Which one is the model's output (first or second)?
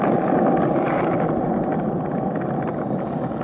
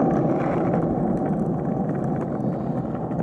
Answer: first